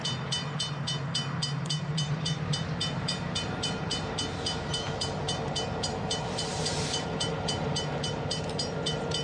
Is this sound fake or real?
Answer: fake